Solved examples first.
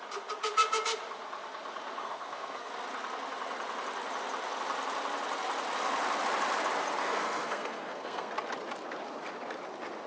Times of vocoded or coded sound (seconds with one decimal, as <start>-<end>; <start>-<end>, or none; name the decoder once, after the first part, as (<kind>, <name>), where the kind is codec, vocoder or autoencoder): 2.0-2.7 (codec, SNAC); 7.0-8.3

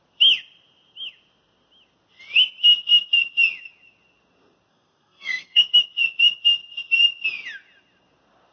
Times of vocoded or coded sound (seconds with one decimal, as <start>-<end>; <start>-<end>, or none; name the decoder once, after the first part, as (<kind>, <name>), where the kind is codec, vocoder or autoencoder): 4.7-5.7 (codec, SNAC)

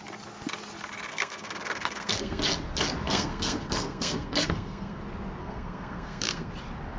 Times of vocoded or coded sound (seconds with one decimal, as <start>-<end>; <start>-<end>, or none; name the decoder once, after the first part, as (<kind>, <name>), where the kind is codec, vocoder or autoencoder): 1.1-2.4 (codec, SNAC); 3.1-5.0; 5.4-6.5

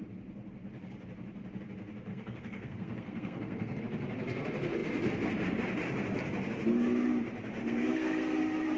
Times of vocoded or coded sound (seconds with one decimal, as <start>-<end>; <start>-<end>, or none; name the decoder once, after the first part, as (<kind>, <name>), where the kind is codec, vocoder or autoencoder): 2.1-3.8 (codec, SNAC); 7.6-8.4